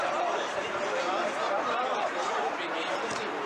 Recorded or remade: remade